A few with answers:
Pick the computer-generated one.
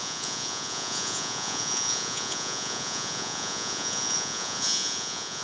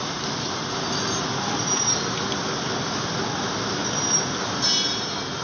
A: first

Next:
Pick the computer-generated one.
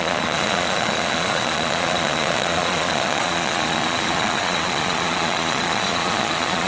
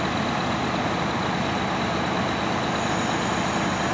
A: first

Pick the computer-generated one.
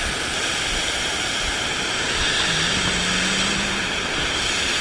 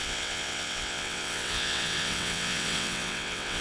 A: second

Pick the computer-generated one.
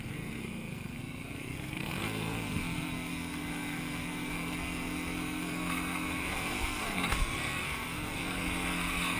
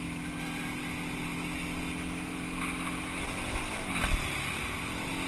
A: first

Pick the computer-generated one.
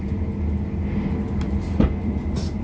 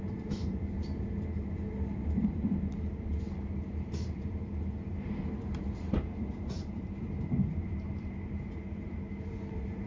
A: second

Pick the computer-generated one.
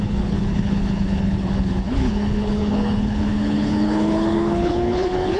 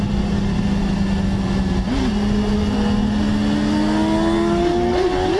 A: first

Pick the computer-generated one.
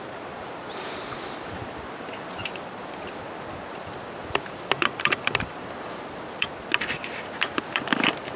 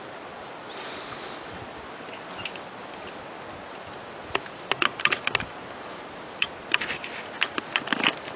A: first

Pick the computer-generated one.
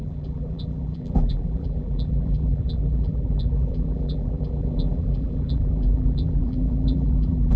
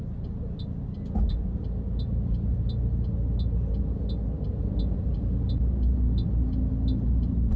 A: first